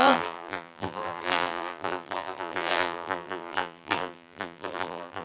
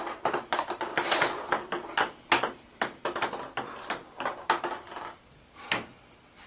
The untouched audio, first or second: second